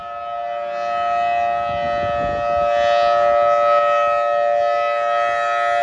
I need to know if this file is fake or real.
real